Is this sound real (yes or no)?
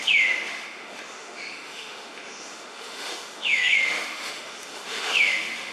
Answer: no